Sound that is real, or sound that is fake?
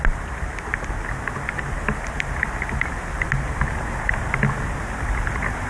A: real